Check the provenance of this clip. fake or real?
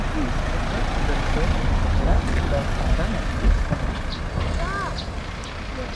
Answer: real